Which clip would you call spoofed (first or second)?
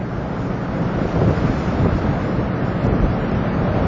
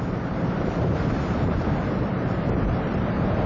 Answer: second